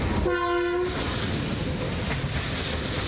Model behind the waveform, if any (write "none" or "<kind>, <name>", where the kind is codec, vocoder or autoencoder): none